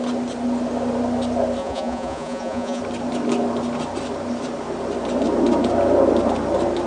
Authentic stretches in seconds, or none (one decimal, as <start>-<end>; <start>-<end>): 0.0-1.6; 2.8-6.9